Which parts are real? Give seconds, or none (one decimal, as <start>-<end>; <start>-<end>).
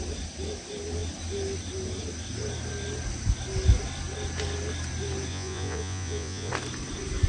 0.0-5.3; 6.5-7.3